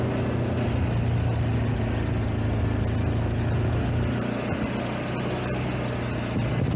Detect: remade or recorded recorded